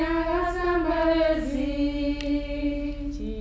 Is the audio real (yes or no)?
yes